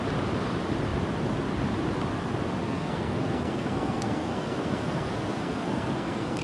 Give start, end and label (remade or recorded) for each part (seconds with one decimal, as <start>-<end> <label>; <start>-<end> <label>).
0.0-2.6 recorded; 2.6-6.4 remade